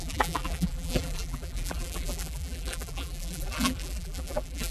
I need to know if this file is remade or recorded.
remade